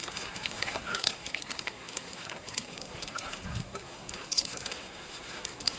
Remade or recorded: remade